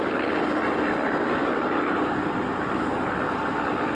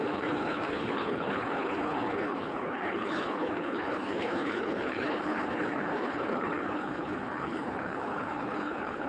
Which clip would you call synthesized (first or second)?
second